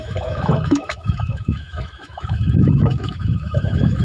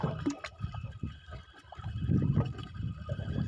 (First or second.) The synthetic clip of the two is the first